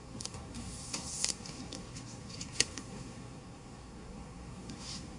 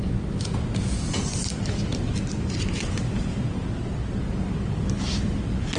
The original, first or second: second